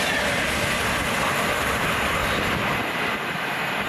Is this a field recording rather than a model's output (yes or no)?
yes